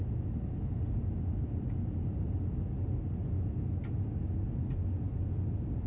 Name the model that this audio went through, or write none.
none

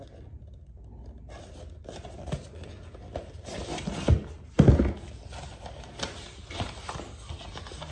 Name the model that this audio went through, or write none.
none